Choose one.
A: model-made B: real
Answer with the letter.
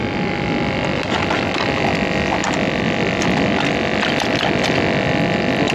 B